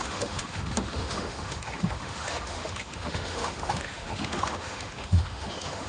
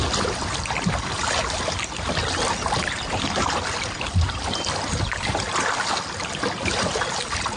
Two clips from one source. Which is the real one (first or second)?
second